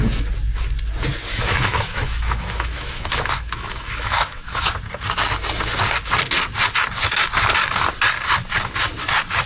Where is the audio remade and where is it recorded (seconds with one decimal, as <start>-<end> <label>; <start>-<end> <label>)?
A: 0.0-1.3 recorded; 1.3-4.7 remade; 4.7-9.5 recorded